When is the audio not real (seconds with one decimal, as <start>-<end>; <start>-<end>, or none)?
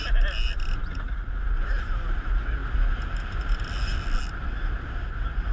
0.8-1.4